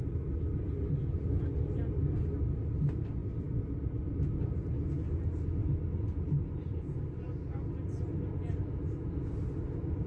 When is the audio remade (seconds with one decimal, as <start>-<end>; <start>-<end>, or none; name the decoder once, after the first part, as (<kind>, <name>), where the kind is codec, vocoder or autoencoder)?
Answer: none